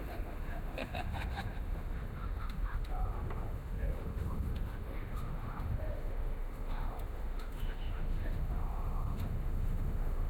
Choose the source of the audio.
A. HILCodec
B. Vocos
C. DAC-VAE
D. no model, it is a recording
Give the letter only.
C